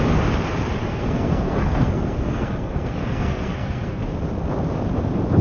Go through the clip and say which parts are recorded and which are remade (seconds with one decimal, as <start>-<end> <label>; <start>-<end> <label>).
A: 0.0-0.8 recorded; 0.8-4.0 remade; 4.0-5.4 recorded